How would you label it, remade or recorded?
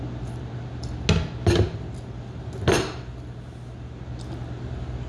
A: recorded